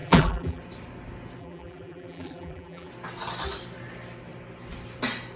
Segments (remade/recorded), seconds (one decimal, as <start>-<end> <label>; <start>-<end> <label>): 0.0-0.6 remade; 0.6-1.4 recorded; 1.4-2.9 remade; 2.9-5.4 recorded